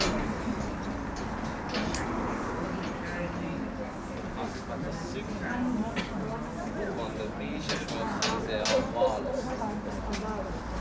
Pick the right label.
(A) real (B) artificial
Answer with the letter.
A